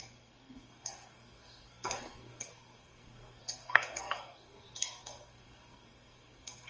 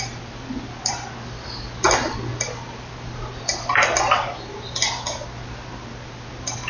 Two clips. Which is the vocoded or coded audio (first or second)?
first